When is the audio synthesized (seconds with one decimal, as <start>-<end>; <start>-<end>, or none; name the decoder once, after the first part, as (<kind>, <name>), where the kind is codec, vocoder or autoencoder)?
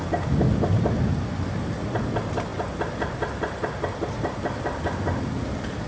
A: none